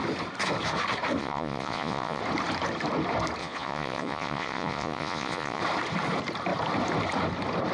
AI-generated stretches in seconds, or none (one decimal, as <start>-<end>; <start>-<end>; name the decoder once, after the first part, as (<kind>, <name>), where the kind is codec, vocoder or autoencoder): 1.2-2.2 (vocoder, Vocos); 3.4-5.6